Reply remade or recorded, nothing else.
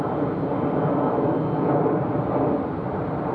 recorded